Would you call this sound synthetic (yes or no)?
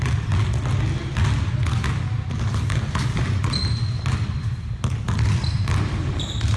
no